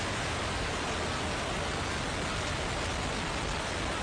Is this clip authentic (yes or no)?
yes